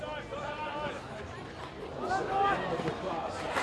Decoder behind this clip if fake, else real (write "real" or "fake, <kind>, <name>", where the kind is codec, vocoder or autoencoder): real